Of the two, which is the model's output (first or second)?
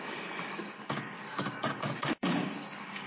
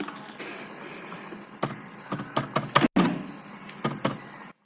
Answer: first